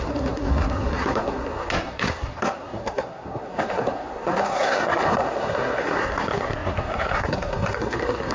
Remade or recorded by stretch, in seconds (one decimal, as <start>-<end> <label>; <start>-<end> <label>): 0.0-8.3 remade